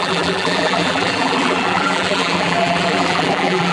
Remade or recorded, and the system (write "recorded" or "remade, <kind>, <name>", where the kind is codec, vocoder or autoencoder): remade, vocoder, BigVGAN v2